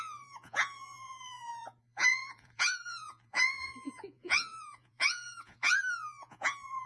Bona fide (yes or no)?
no